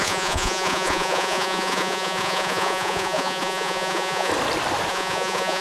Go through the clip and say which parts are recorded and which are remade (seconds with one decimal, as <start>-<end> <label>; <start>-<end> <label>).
0.0-4.3 remade; 4.3-4.9 recorded; 4.9-5.6 remade